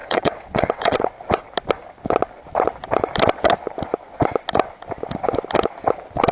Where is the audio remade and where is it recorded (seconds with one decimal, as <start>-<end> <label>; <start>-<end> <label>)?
0.0-1.1 remade; 1.1-6.3 recorded